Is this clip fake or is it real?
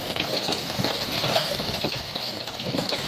fake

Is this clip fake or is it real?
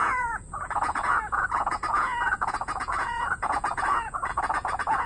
fake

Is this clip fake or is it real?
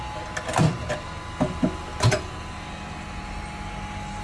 real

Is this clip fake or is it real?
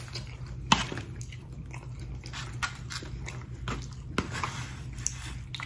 real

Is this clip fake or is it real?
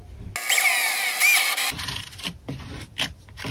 real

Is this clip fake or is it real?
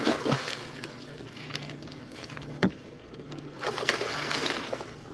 fake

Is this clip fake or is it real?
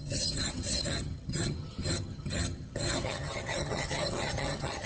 fake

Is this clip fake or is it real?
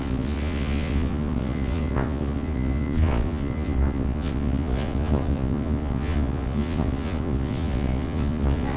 fake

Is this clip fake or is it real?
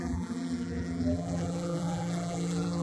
fake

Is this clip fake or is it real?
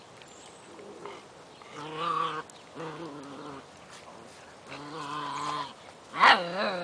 real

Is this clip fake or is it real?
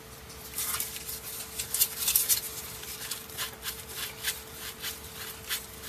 fake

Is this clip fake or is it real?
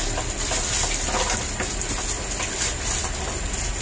real